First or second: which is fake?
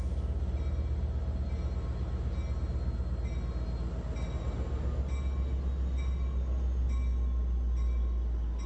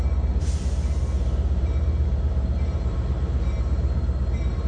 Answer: second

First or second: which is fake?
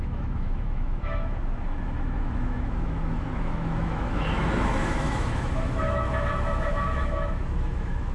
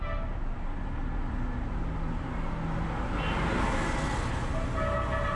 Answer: first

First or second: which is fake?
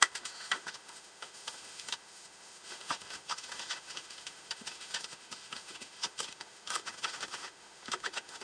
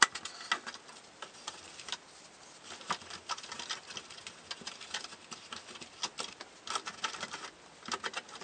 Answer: first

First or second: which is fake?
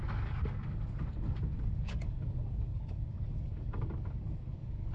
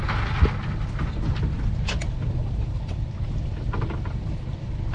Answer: first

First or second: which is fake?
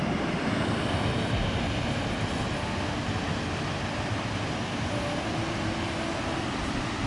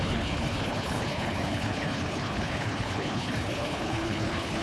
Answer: second